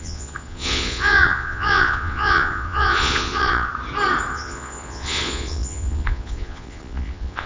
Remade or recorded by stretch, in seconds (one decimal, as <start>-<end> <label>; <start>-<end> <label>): 0.0-3.7 remade; 3.7-4.3 recorded; 4.3-7.5 remade